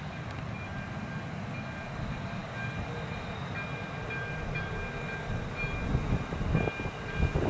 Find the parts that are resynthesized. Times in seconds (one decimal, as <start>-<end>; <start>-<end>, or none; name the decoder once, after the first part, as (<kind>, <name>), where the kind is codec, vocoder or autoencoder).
none